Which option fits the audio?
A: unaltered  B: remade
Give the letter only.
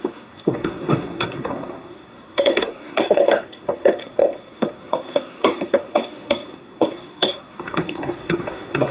B